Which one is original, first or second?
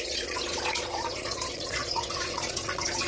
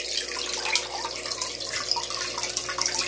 second